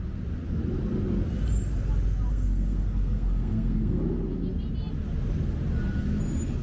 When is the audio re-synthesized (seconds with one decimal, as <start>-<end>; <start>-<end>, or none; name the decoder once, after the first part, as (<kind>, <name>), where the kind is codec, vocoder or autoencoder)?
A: 2.3-4.0 (codec, SNAC)